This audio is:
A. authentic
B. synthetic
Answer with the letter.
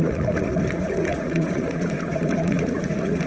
B